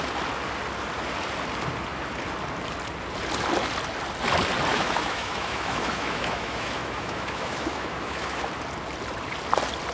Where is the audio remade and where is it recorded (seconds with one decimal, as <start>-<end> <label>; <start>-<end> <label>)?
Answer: 0.0-4.7 recorded; 4.7-8.5 remade; 8.5-9.9 recorded